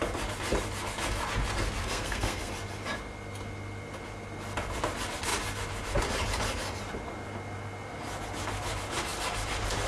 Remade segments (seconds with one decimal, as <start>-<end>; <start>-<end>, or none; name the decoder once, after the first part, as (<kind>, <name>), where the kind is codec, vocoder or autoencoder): 1.8-2.5 (codec, SNAC)